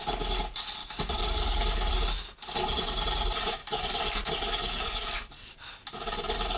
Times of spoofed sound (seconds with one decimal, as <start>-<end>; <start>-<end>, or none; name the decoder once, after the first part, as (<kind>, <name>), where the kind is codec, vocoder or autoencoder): 0.8-1.9 (codec, DAC); 3.6-5.5